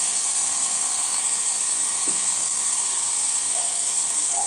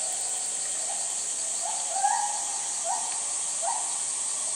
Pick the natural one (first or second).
second